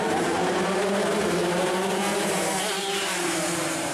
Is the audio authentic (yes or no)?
no